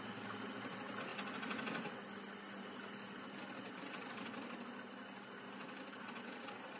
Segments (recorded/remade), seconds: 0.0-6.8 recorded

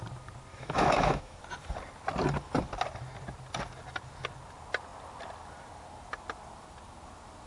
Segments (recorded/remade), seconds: 0.0-0.5 recorded; 0.5-1.4 remade; 1.4-7.5 recorded